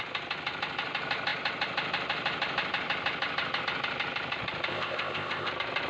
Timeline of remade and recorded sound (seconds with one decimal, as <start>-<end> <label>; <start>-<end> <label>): 0.0-4.7 recorded; 4.7-5.5 remade; 5.5-5.9 recorded